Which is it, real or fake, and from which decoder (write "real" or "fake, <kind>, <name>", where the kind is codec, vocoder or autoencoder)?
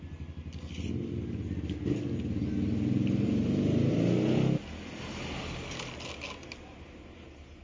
real